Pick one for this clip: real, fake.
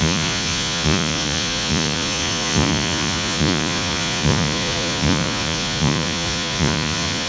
fake